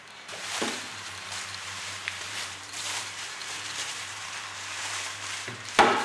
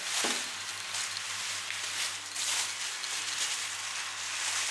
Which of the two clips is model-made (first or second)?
first